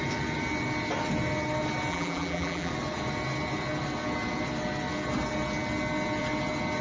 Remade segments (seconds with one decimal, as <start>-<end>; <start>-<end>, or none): 1.9-2.7